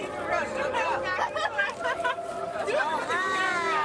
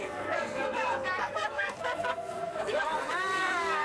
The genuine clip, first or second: first